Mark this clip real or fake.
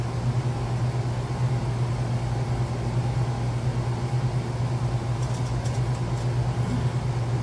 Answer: real